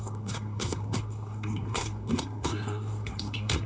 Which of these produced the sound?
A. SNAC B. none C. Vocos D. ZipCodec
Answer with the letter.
A